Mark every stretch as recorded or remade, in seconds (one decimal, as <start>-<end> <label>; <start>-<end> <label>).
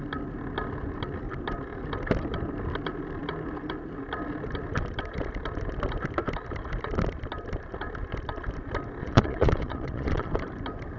0.0-9.0 recorded; 9.0-10.3 remade; 10.3-11.0 recorded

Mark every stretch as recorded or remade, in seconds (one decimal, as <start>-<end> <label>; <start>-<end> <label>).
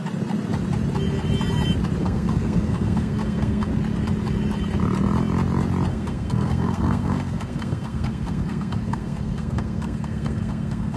0.0-2.0 recorded; 2.0-3.7 remade; 3.7-5.9 recorded; 5.9-11.0 remade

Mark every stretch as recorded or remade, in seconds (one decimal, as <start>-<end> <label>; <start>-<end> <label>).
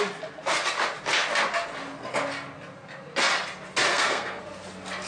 0.0-3.9 recorded; 3.9-4.4 remade; 4.4-5.1 recorded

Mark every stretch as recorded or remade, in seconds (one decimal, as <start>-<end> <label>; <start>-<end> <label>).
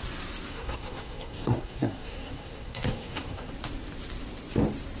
0.0-0.5 recorded; 0.5-3.5 remade; 3.5-5.0 recorded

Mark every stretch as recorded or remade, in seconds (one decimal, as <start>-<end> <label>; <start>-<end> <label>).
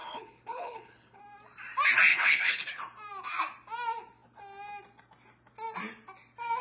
0.0-1.2 remade; 1.2-2.1 recorded; 2.1-2.8 remade; 2.8-6.6 recorded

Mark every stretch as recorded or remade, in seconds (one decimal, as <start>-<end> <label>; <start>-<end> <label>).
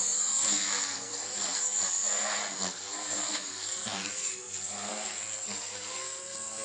0.0-6.6 remade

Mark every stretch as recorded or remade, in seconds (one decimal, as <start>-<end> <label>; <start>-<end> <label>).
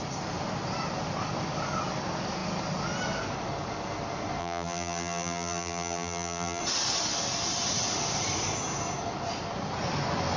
0.0-4.4 recorded; 4.4-6.6 remade; 6.6-10.4 recorded